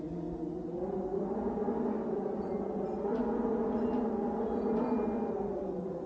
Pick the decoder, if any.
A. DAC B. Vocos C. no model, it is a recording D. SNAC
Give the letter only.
C